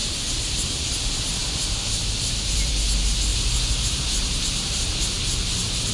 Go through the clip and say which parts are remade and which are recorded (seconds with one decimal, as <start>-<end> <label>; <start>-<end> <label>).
0.0-0.5 remade; 0.5-1.4 recorded; 1.4-2.7 remade; 2.7-3.3 recorded; 3.3-5.9 remade

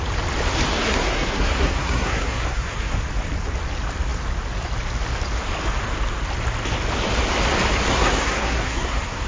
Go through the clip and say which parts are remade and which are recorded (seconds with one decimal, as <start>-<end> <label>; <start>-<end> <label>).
0.0-0.7 recorded; 0.7-3.0 remade; 3.0-7.9 recorded; 7.9-9.3 remade

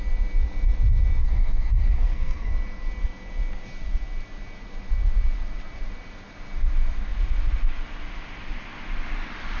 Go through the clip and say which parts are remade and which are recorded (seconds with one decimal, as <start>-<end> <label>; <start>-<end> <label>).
0.0-1.2 recorded; 1.2-2.5 remade; 2.5-9.6 recorded

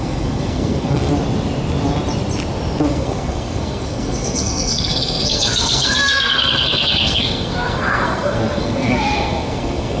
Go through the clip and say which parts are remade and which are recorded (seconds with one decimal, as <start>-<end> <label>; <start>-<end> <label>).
0.0-1.1 remade; 1.1-2.9 recorded; 2.9-10.0 remade

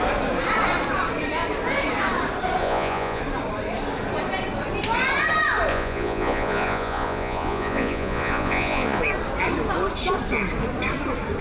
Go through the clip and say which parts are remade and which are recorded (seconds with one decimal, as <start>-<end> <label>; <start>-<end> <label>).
0.0-2.6 recorded; 2.6-3.2 remade; 3.2-5.7 recorded; 5.7-9.0 remade; 9.0-11.4 recorded

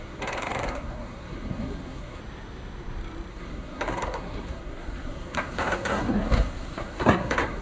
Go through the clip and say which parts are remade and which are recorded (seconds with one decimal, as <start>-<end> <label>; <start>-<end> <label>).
0.0-2.2 remade; 2.2-3.3 recorded; 3.3-7.6 remade